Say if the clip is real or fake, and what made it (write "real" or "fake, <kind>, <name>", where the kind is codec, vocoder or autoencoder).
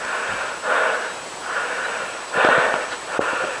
real